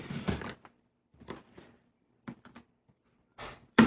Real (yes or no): no